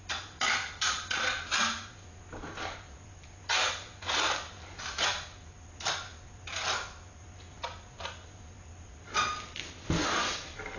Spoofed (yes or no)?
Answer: no